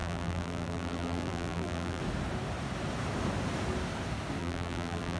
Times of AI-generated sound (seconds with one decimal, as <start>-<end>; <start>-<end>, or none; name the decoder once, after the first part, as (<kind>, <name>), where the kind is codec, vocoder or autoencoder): 0.0-2.0 (vocoder, BigVGAN v2); 4.4-5.2

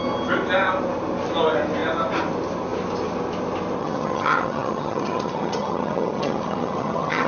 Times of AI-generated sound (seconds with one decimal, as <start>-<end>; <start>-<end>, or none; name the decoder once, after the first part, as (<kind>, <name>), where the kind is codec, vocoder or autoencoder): 3.8-7.3 (vocoder, HiFi-GAN)

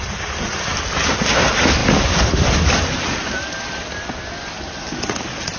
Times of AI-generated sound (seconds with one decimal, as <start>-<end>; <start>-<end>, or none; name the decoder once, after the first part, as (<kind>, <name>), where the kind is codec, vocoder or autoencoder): none

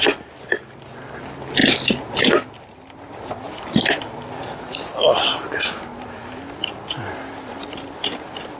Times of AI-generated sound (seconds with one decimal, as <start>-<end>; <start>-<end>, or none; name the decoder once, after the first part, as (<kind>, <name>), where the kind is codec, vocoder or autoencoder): none

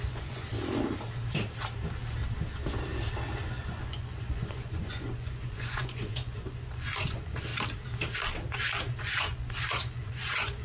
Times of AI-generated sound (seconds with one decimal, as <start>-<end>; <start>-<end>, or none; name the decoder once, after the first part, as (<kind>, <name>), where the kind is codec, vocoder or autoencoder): 0.0-0.5 (vocoder, Vocos); 3.4-7.5; 8.9-10.6

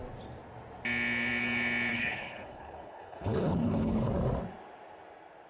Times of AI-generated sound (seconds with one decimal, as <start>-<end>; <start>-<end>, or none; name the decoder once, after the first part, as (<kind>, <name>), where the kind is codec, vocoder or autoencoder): 1.9-4.1 (codec, HILCodec)

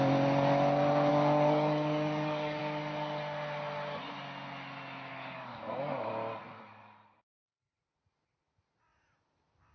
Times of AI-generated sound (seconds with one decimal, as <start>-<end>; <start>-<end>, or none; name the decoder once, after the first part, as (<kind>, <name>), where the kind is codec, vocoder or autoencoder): 1.1-2.6 (codec, DAC); 5.1-6.1

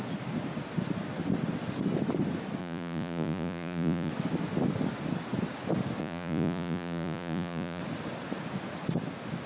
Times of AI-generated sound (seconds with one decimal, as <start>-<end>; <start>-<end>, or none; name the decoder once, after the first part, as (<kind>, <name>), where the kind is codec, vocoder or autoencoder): 2.6-4.1 (vocoder, Vocos); 6.0-7.8